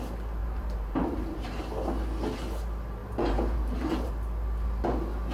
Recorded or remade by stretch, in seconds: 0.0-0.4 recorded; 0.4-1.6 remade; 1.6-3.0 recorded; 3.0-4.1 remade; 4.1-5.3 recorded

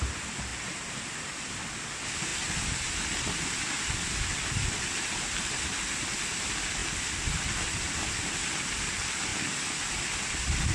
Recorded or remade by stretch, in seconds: 0.0-10.7 recorded

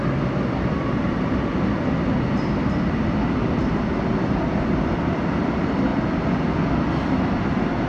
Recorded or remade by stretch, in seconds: 0.0-3.6 remade; 3.6-4.1 recorded; 4.1-5.9 remade; 5.9-7.2 recorded; 7.2-7.9 remade

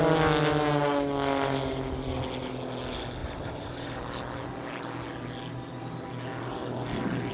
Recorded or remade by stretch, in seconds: 0.0-3.2 recorded; 3.2-4.0 remade; 4.0-7.3 recorded

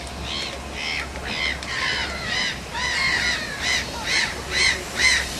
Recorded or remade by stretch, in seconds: 0.0-2.0 recorded; 2.0-5.4 remade

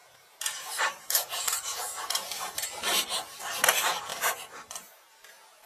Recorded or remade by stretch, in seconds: 0.0-3.4 remade; 3.4-4.1 recorded; 4.1-5.7 remade